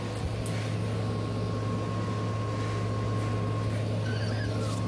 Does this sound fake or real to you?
real